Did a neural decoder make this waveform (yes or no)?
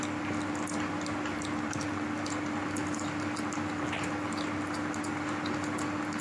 no